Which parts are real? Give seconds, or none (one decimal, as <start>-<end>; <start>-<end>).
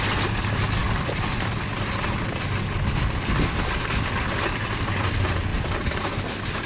0.0-6.7